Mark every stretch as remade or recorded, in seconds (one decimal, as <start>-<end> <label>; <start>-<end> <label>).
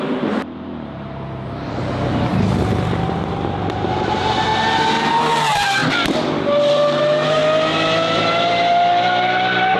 0.0-4.5 remade; 4.5-5.1 recorded; 5.1-5.8 remade; 5.8-6.7 recorded; 6.7-7.4 remade; 7.4-8.2 recorded; 8.2-9.8 remade